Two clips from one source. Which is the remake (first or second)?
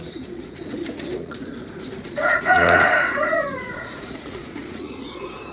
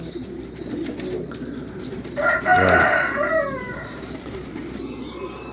first